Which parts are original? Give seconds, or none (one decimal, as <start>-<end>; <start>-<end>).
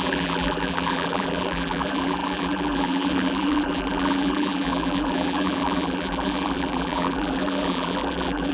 none